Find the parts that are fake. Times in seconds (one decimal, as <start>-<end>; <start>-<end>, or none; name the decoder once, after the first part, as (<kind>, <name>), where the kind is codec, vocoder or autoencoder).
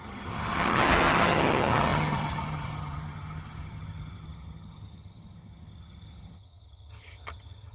0.0-7.7 (vocoder, HiFi-GAN)